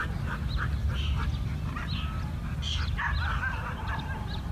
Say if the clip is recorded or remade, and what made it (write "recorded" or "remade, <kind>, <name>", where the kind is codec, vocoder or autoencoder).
recorded